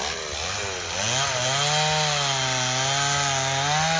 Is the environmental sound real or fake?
real